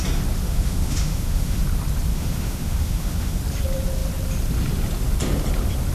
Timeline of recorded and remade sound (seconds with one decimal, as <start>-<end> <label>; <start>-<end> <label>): 0.0-0.4 recorded; 0.4-1.6 remade; 1.6-2.1 recorded; 2.1-3.4 remade; 3.4-5.9 recorded